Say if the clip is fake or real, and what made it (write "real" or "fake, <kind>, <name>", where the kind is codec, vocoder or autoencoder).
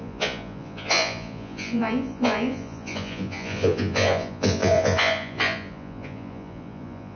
fake, vocoder, Vocos